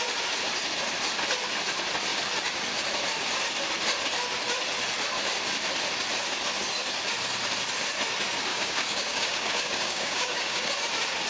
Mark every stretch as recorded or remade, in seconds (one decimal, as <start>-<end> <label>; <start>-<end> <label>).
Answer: 0.0-8.5 recorded; 8.5-10.7 remade; 10.7-11.3 recorded